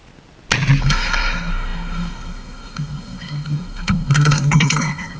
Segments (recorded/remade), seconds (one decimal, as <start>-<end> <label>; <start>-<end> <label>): 0.0-0.8 recorded; 0.8-5.2 remade